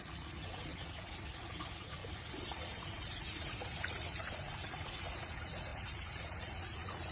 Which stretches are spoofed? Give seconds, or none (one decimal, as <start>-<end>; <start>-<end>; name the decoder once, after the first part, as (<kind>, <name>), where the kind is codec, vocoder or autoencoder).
0.0-7.1 (vocoder, Vocos)